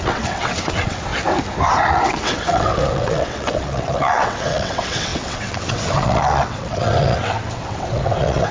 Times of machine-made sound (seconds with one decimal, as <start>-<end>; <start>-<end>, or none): 0.0-1.1; 1.9-8.5